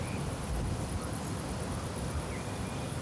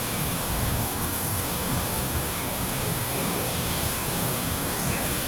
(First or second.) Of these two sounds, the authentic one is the first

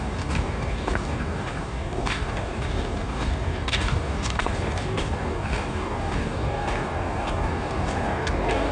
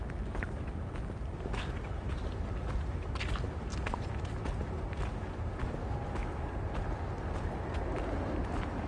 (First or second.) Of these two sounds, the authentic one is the second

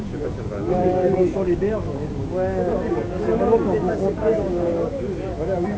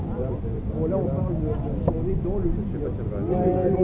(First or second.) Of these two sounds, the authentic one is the second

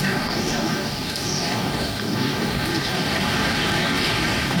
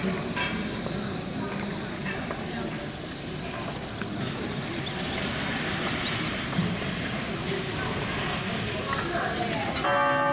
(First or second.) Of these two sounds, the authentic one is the second